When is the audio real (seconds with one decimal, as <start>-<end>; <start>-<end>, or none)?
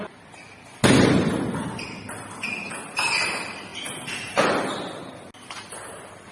0.0-6.3